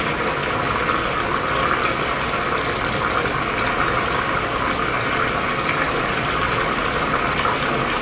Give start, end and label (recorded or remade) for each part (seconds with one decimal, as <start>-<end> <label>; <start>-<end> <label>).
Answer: 0.0-8.0 recorded